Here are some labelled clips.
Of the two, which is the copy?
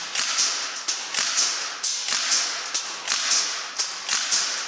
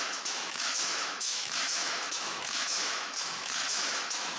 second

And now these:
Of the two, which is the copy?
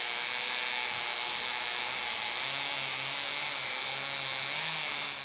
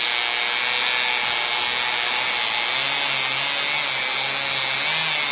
first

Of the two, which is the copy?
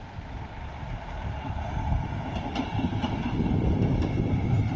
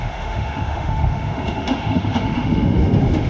second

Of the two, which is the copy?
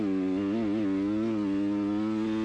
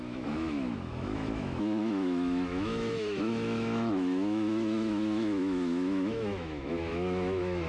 second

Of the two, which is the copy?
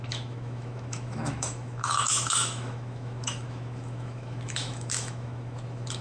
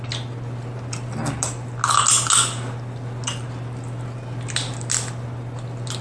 first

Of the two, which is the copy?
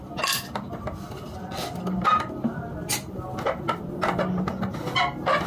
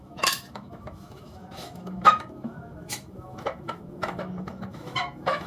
second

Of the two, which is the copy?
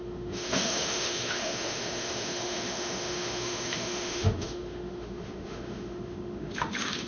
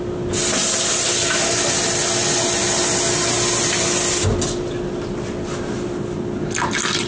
first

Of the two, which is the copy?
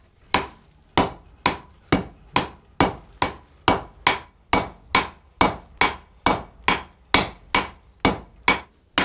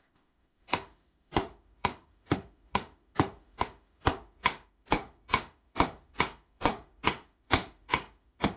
second